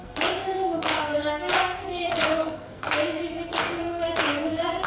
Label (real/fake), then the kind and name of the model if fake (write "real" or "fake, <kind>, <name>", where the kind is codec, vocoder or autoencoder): fake, codec, SNAC